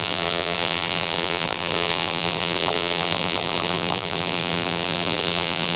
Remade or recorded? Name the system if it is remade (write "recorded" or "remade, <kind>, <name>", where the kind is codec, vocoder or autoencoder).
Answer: remade, vocoder, BigVGAN v2